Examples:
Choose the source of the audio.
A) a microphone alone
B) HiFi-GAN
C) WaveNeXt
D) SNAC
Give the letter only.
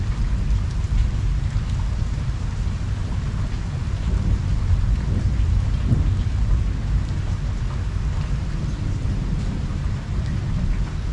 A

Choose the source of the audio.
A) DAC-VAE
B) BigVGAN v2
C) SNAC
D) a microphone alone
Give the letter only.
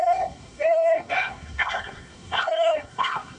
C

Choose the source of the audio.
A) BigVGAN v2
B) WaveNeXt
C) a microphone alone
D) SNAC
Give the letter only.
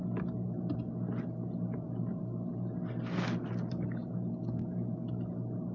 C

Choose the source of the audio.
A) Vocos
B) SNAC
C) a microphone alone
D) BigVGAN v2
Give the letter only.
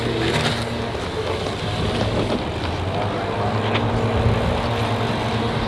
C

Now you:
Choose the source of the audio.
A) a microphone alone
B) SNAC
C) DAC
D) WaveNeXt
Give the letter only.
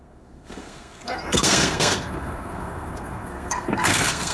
B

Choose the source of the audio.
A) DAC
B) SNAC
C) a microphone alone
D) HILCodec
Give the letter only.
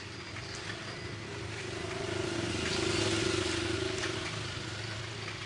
C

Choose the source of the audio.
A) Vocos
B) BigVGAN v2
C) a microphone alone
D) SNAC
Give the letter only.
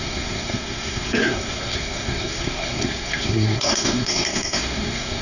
D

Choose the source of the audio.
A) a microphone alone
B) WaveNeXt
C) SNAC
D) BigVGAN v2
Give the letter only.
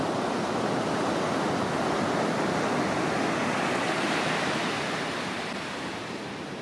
A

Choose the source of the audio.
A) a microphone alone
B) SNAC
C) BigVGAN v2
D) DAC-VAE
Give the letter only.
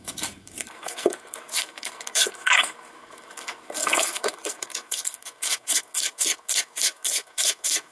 B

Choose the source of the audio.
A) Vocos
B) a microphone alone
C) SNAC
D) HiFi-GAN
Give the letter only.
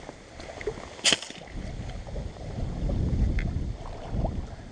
B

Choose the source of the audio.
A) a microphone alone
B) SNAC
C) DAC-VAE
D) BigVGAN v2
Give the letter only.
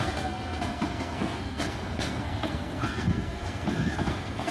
B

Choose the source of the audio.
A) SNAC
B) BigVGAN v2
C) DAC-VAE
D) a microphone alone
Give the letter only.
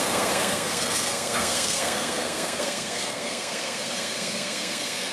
A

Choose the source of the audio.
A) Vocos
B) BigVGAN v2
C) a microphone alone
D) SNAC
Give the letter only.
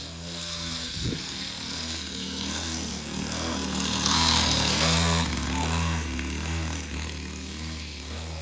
D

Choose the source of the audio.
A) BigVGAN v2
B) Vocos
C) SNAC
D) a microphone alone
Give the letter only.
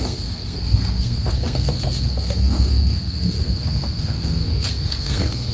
C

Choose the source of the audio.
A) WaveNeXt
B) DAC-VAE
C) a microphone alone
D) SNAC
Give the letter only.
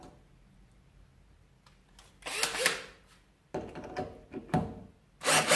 C